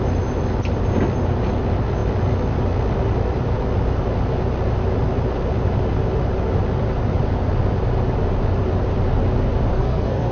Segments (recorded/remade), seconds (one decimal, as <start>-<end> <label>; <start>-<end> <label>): 0.0-9.7 recorded; 9.7-10.3 remade